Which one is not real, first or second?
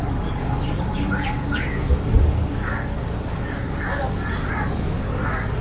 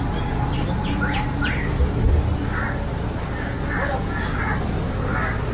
first